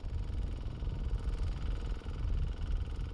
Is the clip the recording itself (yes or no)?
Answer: yes